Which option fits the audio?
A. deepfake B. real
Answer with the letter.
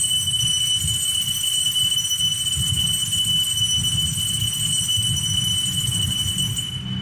B